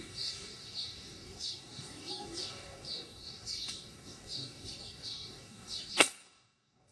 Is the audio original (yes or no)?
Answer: no